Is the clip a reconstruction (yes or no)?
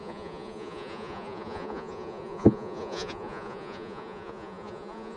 yes